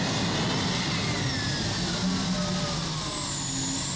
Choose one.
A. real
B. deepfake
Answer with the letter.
A